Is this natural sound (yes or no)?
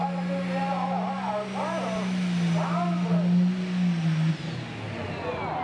yes